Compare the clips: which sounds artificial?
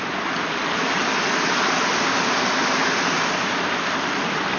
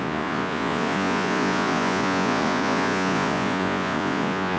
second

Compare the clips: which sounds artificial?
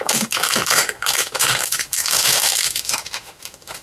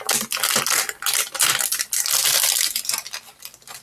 first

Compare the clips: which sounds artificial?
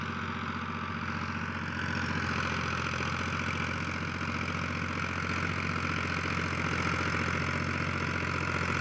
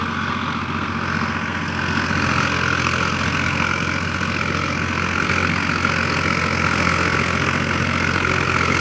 second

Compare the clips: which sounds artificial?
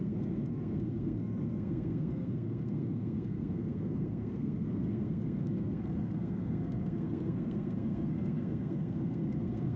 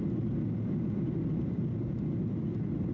first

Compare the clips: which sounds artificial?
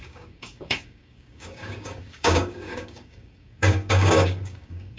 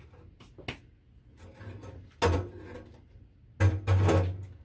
first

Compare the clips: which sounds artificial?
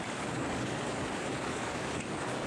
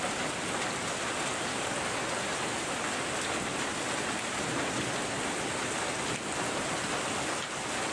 first